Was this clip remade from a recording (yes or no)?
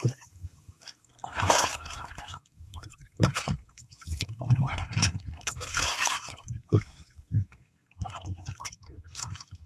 yes